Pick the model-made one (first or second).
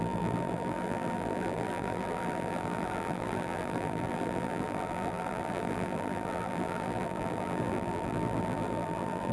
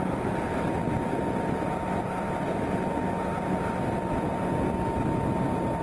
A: first